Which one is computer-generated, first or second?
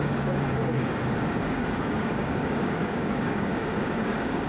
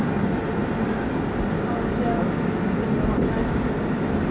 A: first